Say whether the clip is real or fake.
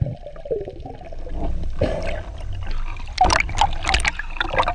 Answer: real